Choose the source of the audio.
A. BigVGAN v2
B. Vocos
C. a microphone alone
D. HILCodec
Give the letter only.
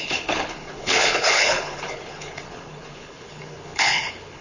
D